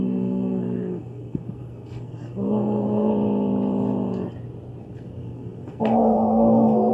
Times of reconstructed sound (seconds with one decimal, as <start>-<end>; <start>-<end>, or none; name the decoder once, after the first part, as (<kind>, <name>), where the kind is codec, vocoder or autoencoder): 0.0-3.1 (codec, SNAC); 4.8-6.9